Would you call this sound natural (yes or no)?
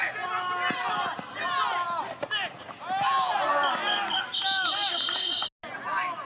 yes